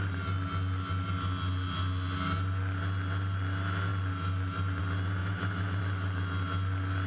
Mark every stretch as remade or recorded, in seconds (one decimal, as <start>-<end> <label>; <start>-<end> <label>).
0.0-7.1 recorded